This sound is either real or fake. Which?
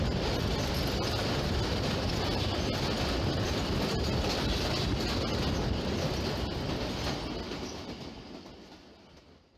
real